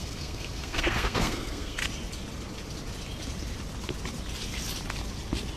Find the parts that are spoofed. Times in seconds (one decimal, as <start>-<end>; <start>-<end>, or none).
0.0-1.8